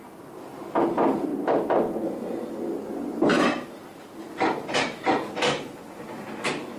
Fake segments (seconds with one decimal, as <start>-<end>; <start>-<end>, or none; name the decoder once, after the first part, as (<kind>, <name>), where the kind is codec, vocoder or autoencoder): 3.3-4.1 (vocoder, BigVGAN v2)